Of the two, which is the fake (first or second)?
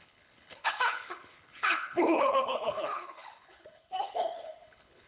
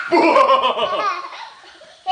first